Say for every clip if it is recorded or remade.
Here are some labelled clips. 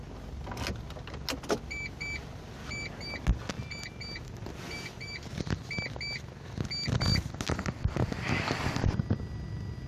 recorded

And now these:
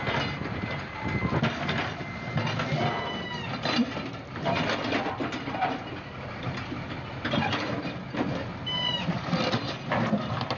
recorded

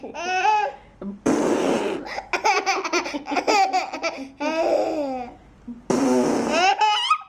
recorded